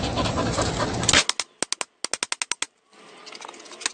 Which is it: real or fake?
real